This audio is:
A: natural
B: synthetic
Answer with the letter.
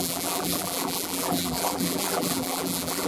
B